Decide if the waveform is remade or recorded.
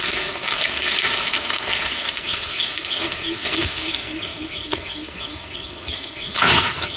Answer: remade